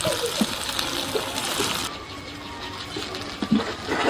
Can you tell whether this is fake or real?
real